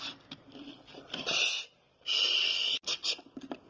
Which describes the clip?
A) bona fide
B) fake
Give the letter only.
A